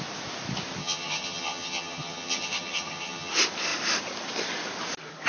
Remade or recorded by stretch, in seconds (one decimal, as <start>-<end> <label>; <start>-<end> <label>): 0.0-0.8 recorded; 0.8-3.3 remade; 3.3-5.3 recorded